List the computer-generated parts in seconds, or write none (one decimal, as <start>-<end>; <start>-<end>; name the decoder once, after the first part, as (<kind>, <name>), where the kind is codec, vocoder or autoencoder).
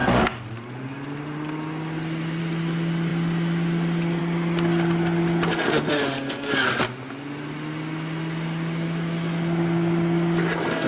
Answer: none